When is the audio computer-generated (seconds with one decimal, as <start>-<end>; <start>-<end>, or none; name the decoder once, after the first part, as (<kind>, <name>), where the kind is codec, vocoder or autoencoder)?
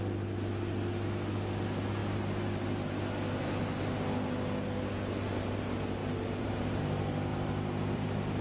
6.0-6.8 (vocoder, BigVGAN v2); 7.3-8.4